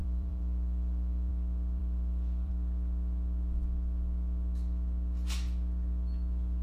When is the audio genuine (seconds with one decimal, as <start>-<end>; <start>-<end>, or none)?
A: 1.3-1.8; 2.5-6.6